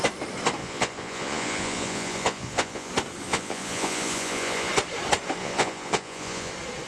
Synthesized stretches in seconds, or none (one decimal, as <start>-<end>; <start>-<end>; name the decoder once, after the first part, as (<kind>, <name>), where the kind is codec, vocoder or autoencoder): 0.6-2.9 (vocoder, Vocos); 3.3-4.7; 5.4-6.5